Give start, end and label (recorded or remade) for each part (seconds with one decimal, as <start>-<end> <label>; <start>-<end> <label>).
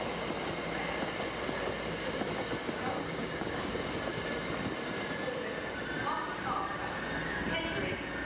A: 0.0-2.6 recorded; 2.6-3.7 remade; 3.7-8.3 recorded